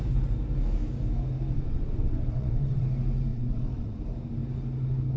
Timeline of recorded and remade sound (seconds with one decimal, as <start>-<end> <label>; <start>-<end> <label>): 0.0-1.5 recorded; 1.5-2.8 remade; 2.8-3.3 recorded; 3.3-4.0 remade; 4.0-5.2 recorded